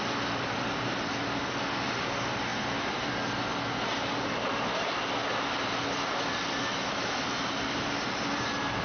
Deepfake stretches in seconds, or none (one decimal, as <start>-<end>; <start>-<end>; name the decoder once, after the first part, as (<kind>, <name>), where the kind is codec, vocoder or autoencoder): none